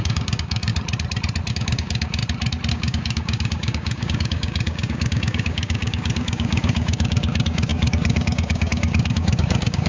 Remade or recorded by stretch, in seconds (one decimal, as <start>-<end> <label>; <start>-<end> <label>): 0.0-0.7 remade; 0.7-1.5 recorded; 1.5-2.2 remade; 2.2-2.7 recorded; 2.7-9.9 remade